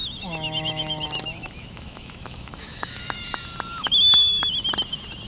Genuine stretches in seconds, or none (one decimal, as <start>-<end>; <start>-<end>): 3.2-3.8; 4.5-5.3